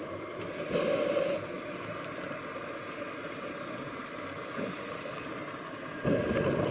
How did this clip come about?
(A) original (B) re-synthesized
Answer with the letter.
A